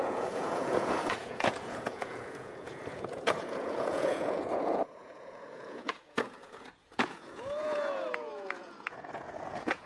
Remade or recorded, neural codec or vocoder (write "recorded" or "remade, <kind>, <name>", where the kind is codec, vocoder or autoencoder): remade, vocoder, Vocos